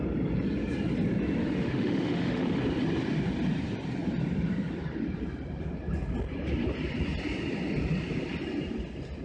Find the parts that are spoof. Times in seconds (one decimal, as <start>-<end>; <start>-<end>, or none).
1.4-2.6